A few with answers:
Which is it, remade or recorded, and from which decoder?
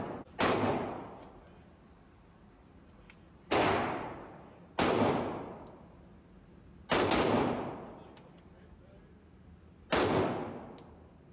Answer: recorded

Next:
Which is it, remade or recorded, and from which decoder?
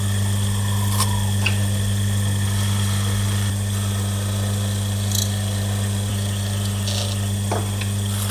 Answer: recorded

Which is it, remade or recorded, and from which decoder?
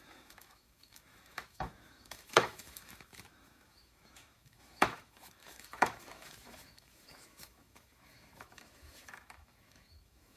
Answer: remade, autoencoder, DAC-VAE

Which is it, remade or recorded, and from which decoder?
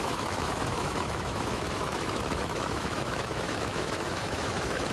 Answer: remade, autoencoder, DAC-VAE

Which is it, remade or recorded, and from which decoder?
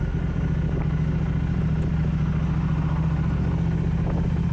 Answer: recorded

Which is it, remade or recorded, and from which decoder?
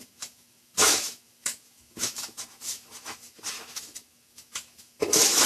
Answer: remade, autoencoder, DAC-VAE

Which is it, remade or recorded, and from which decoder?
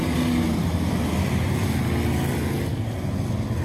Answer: recorded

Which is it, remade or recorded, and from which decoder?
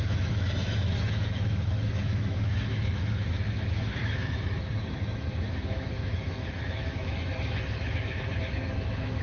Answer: remade, autoencoder, DAC-VAE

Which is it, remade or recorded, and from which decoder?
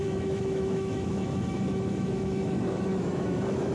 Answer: remade, autoencoder, DAC-VAE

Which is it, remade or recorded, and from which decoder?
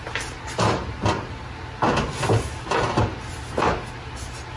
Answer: recorded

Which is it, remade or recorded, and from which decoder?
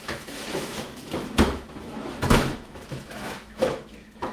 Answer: remade, autoencoder, DAC-VAE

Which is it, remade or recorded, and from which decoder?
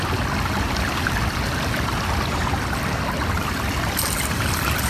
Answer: recorded